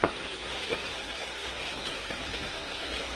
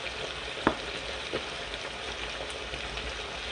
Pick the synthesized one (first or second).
first